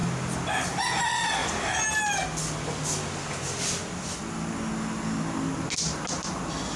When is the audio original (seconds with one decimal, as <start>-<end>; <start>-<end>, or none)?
0.0-6.8